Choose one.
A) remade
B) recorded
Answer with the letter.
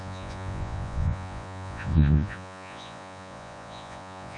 A